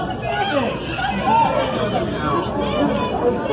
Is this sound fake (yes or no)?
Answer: no